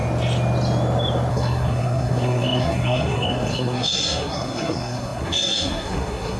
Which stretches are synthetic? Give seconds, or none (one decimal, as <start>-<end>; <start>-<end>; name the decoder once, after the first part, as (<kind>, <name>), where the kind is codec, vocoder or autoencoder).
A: 1.3-6.4 (codec, SNAC)